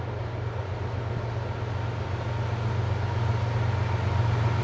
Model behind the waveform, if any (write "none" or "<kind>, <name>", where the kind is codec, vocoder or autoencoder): none